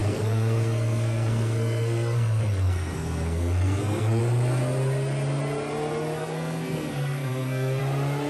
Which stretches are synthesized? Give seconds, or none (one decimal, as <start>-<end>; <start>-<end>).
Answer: 0.0-4.2; 6.2-7.8

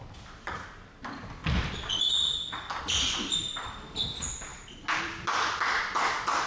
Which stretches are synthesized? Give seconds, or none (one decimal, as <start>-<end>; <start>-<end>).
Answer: none

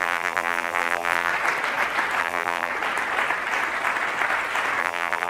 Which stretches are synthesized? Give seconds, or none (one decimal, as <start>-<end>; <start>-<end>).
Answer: 0.0-1.3; 2.2-2.7; 4.8-5.3

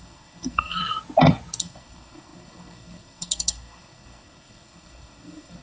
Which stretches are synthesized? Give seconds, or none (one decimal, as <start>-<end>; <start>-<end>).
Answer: 0.0-0.8; 1.6-5.6

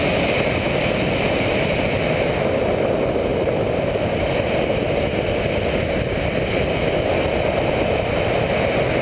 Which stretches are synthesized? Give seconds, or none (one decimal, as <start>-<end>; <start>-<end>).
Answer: 3.3-4.1

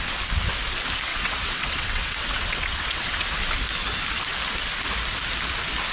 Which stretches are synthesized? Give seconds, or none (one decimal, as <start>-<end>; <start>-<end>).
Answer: 1.1-3.4